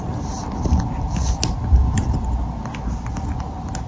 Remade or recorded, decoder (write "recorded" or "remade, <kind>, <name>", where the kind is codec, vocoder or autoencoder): recorded